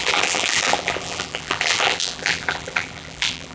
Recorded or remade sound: remade